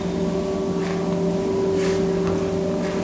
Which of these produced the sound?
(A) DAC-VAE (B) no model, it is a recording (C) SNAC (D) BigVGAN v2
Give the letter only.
B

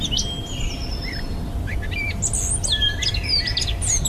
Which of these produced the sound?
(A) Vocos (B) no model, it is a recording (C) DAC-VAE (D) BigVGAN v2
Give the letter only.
B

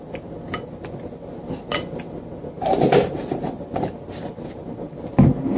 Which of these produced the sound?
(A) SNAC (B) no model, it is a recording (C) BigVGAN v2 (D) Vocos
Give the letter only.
B